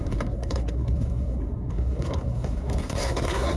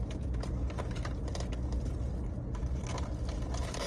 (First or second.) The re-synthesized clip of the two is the first